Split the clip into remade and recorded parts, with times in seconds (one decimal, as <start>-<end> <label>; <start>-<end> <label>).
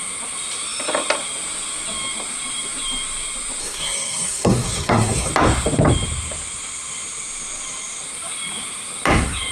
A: 0.0-3.6 recorded; 3.6-5.3 remade; 5.3-9.5 recorded